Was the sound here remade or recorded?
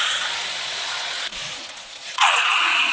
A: remade